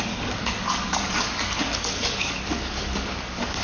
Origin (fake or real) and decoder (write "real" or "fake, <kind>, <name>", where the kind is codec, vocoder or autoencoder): fake, codec, DAC